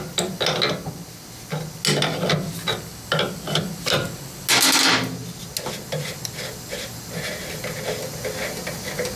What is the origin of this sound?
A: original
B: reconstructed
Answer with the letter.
A